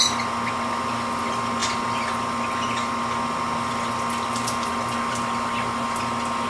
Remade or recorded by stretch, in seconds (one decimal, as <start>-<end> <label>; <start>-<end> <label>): 0.0-6.5 recorded